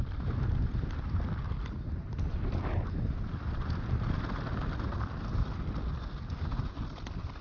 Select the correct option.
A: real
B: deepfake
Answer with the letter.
A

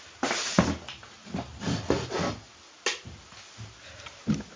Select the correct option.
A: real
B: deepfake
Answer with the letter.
A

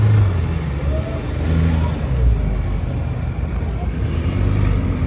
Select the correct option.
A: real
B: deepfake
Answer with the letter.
A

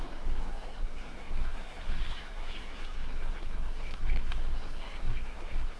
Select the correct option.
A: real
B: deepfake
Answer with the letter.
B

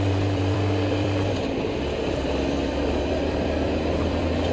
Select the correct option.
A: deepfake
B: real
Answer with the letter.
A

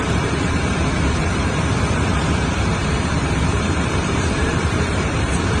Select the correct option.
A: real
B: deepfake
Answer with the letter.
B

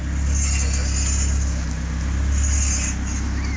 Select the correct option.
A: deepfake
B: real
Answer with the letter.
B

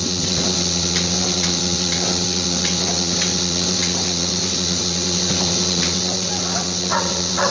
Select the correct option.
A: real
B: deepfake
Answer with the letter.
B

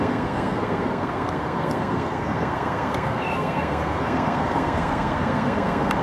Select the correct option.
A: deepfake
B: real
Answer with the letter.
A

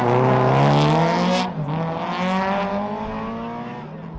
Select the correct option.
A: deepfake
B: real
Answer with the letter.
B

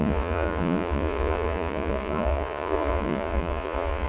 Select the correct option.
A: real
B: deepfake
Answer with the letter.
B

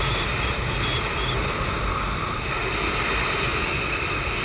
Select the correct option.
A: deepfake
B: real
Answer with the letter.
B